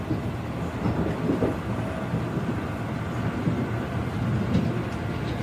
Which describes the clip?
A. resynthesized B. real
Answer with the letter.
B